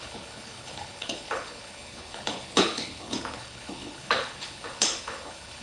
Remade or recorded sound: remade